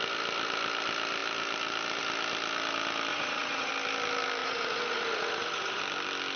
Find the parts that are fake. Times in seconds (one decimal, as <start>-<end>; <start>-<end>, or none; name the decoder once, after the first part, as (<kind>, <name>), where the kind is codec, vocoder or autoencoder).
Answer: 3.1-3.7 (vocoder, Vocos); 4.4-5.8